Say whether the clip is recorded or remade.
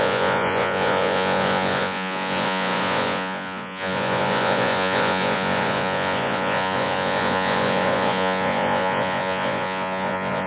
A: remade